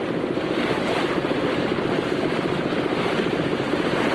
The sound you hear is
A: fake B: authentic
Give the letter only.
B